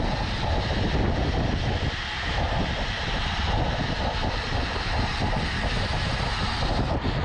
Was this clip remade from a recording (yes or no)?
no